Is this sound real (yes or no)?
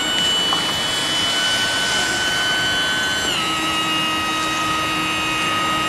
yes